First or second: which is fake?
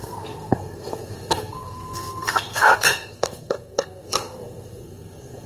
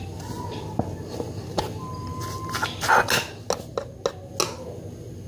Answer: first